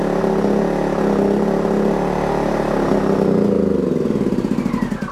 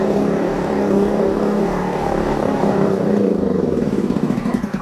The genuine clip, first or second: first